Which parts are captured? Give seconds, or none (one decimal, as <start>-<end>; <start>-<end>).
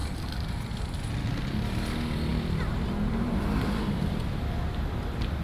0.8-2.3; 4.2-5.4